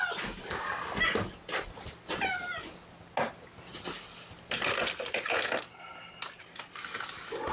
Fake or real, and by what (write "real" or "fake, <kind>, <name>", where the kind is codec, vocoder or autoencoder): real